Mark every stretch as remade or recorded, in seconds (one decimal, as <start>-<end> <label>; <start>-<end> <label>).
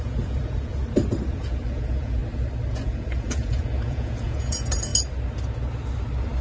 0.0-0.8 remade; 0.8-1.3 recorded; 1.3-2.2 remade; 2.2-2.7 recorded; 2.7-4.9 remade; 4.9-6.4 recorded